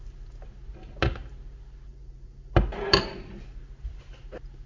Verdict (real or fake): real